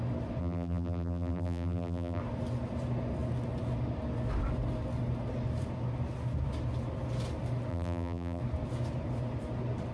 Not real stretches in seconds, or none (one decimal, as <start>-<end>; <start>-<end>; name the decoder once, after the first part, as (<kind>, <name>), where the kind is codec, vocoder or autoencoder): 0.4-2.2 (vocoder, BigVGAN v2); 7.7-8.4